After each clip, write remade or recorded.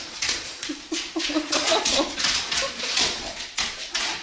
remade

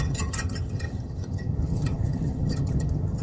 remade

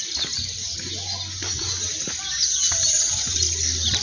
recorded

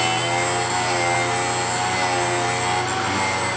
recorded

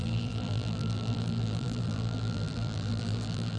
remade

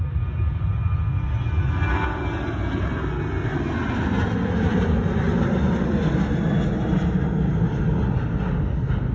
recorded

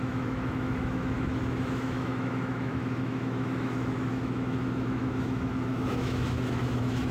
remade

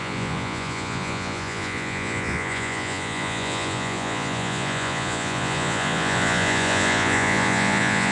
remade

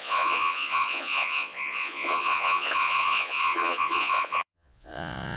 remade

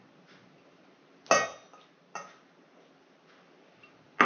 recorded